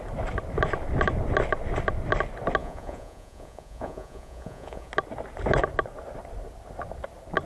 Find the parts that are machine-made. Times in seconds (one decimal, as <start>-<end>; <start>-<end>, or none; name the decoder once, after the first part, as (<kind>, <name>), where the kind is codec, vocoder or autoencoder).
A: 2.6-4.9 (vocoder, Vocos)